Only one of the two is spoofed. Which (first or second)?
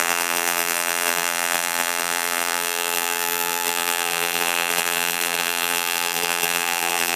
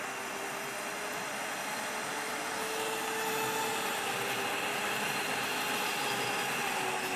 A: first